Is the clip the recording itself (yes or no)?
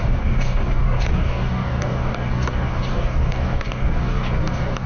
no